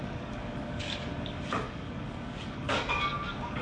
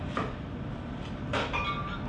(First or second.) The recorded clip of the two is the second